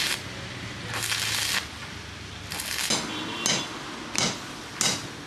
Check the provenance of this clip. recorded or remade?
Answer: recorded